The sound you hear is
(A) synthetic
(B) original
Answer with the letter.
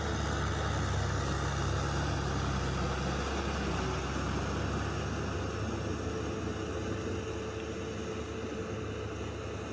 B